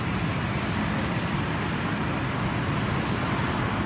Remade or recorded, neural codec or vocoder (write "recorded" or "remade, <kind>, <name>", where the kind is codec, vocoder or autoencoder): recorded